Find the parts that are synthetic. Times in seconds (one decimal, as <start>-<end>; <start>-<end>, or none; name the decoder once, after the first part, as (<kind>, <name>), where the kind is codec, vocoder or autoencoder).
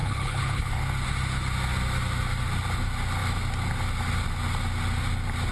0.0-0.8 (codec, HILCodec)